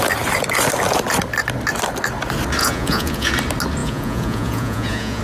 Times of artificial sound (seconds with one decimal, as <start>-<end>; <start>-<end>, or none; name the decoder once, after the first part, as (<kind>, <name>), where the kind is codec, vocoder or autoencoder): 2.6-3.3 (vocoder, Vocos); 3.8-5.2

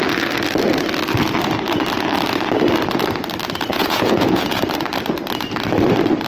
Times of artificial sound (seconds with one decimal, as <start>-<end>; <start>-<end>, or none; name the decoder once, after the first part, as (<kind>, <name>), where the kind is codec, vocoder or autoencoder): 3.7-4.6 (vocoder, Vocos)

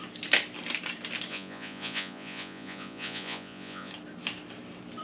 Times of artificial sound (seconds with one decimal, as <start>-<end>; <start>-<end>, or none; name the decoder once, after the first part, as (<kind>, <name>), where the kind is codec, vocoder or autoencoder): 1.3-3.9 (vocoder, Vocos)

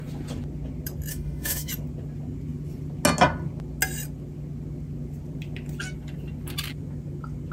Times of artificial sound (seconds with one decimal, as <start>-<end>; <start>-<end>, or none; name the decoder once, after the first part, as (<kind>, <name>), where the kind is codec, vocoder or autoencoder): 1.1-1.7 (autoencoder, DAC-VAE)

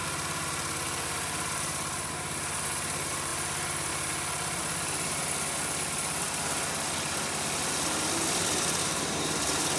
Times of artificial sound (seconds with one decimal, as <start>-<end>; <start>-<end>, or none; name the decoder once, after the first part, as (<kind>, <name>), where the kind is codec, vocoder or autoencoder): 0.0-2.1 (vocoder, BigVGAN v2); 4.6-5.2